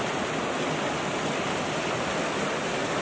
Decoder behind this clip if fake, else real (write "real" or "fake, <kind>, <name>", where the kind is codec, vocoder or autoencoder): real